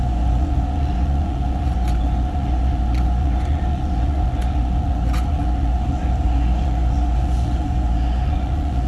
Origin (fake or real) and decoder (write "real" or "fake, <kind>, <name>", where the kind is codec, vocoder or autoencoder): fake, vocoder, Vocos